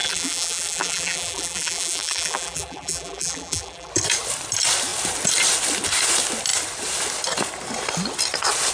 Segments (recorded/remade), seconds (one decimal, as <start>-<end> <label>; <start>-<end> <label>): 0.0-3.9 remade; 3.9-8.7 recorded